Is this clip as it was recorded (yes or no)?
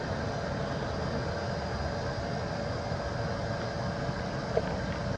yes